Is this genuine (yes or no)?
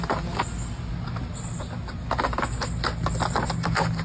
yes